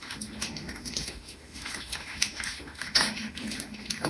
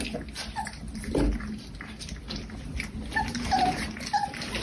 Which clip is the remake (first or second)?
first